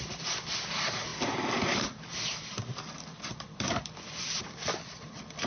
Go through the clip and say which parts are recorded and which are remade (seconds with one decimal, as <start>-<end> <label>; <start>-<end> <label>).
0.0-5.5 remade

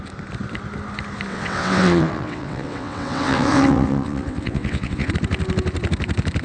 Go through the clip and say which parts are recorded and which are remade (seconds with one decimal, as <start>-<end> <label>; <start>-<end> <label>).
0.0-1.3 recorded; 1.3-5.1 remade; 5.1-6.4 recorded

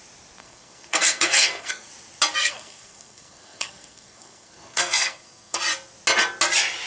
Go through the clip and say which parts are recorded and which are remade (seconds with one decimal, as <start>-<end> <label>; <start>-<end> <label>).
0.0-0.4 recorded; 0.4-1.9 remade; 1.9-2.3 recorded; 2.3-5.6 remade; 5.6-6.9 recorded

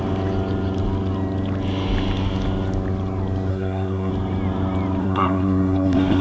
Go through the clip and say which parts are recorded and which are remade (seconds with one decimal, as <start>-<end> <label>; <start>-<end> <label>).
0.0-3.5 recorded; 3.5-4.1 remade; 4.1-5.0 recorded; 5.0-6.2 remade

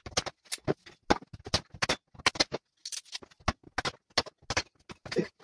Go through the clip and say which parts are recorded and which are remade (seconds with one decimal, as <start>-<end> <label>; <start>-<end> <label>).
0.0-5.4 recorded

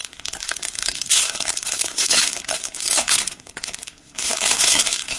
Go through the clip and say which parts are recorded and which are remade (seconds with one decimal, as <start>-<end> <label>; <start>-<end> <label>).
0.0-5.2 remade